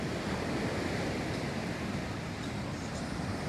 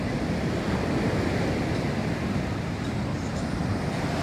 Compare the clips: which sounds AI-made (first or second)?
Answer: first